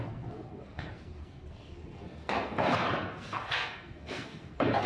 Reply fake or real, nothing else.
fake